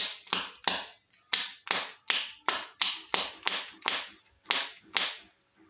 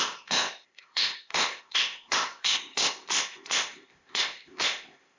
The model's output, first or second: second